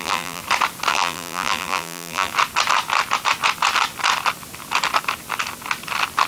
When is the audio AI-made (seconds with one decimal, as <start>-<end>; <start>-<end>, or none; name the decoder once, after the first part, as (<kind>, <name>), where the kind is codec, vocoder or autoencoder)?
0.0-0.4 (vocoder, BigVGAN v2); 0.9-2.3